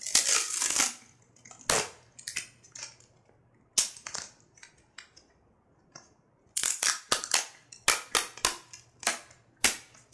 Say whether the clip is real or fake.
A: real